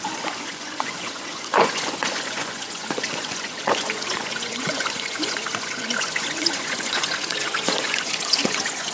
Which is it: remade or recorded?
remade